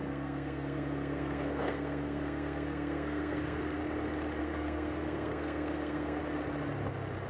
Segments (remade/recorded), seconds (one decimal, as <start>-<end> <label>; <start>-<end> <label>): 0.0-3.8 remade; 3.8-4.4 recorded; 4.4-6.2 remade; 6.2-7.3 recorded